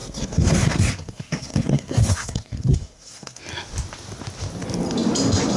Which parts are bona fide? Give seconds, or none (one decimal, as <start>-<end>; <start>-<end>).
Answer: 3.4-5.6